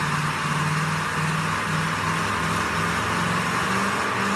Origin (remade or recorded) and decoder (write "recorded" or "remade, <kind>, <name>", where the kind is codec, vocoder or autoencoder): recorded